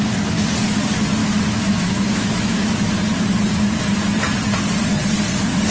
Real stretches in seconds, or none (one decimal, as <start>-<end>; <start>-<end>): 0.0-1.2; 2.9-5.7